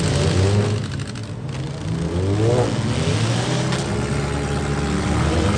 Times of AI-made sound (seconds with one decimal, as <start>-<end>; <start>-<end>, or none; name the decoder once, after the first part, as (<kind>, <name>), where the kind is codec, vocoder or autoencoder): none